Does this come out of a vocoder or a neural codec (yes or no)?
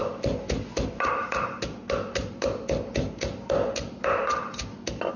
no